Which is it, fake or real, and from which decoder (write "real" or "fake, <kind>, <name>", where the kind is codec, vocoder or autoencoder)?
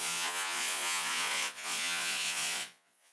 fake, vocoder, Vocos